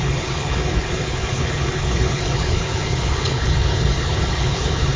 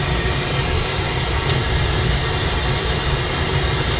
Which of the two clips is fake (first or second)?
first